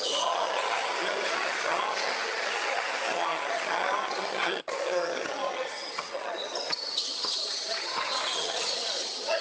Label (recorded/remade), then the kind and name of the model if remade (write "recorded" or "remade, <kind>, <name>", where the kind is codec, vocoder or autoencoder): remade, vocoder, HiFi-GAN